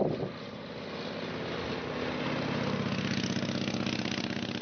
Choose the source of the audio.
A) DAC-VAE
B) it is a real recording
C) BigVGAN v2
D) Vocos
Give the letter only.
B